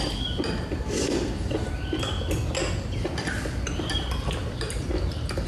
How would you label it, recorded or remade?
recorded